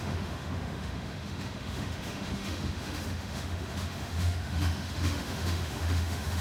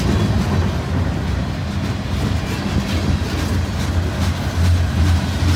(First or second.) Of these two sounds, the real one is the second